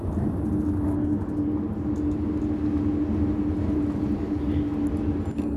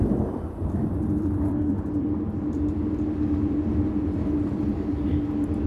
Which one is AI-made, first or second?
second